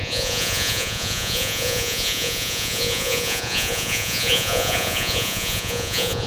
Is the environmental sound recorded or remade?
remade